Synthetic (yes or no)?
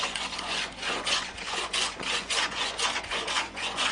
yes